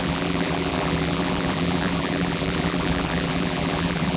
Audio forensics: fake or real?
fake